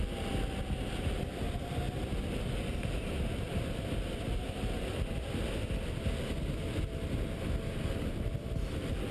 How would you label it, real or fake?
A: real